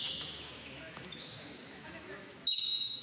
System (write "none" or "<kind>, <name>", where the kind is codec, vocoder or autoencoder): autoencoder, DAC-VAE